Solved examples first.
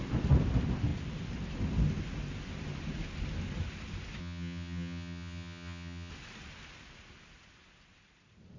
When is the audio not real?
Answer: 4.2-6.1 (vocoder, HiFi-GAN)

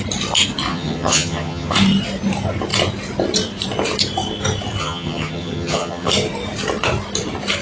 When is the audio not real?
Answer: 0.7-1.7 (vocoder, HiFi-GAN); 4.8-6.1

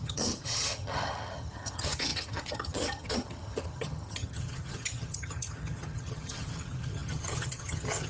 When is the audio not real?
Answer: 0.0-8.1 (vocoder, HiFi-GAN)

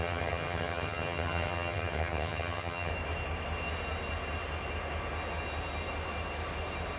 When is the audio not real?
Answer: 0.0-2.9 (vocoder, HiFi-GAN)

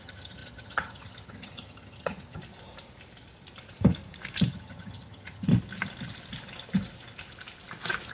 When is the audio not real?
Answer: 0.0-2.4 (vocoder, HiFi-GAN); 4.5-5.5

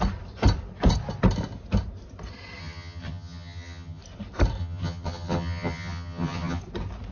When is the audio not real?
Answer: 2.6-4.0 (vocoder, HiFi-GAN); 4.6-6.6

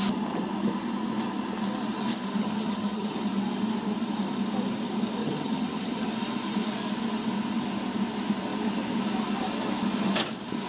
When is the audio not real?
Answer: 2.4-3.1 (vocoder, HiFi-GAN); 5.2-6.1